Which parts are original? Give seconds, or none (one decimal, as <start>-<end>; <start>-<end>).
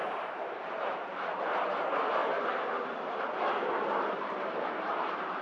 2.2-3.5